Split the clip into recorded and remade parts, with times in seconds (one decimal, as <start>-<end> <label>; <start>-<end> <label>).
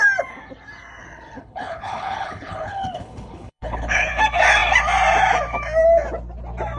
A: 0.0-1.0 recorded; 1.0-4.1 remade; 4.1-6.8 recorded